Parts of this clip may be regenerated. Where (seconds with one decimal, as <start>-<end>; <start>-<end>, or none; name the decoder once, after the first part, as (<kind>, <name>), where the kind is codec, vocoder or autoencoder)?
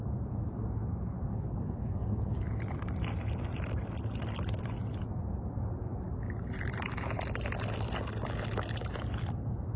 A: 1.3-2.5 (codec, HILCodec)